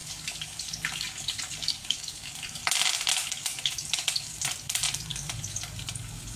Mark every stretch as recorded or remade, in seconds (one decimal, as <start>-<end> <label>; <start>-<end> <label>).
0.0-2.6 remade; 2.6-3.1 recorded; 3.1-4.4 remade; 4.4-5.1 recorded; 5.1-6.4 remade